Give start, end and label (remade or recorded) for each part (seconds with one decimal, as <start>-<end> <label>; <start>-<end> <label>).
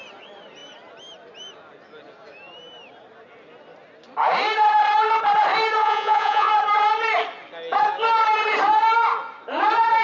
0.0-5.8 recorded; 5.8-6.5 remade; 6.5-10.0 recorded